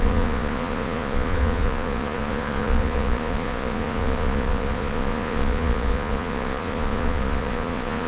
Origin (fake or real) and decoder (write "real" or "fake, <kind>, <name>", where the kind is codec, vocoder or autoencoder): fake, vocoder, Vocos